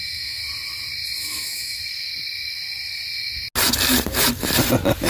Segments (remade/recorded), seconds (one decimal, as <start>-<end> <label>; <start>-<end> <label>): 0.0-0.4 remade; 0.4-1.2 recorded; 1.2-1.8 remade; 1.8-5.1 recorded